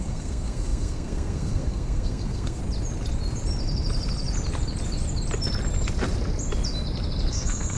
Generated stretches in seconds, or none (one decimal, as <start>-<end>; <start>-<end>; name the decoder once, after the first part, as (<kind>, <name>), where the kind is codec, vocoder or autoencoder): 0.0-2.6 (codec, SNAC); 7.3-7.8